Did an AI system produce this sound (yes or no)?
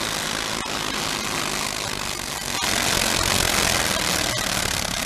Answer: no